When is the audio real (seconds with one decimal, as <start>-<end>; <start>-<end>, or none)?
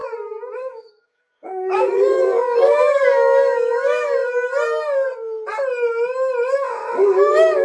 0.0-0.6; 4.2-6.7